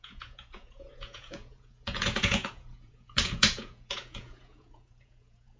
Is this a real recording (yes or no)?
no